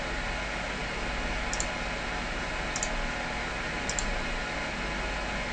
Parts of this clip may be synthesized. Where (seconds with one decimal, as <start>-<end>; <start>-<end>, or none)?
none